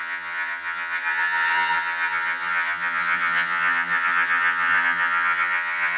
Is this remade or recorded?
remade